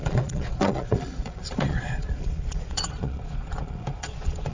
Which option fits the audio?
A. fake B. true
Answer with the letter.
A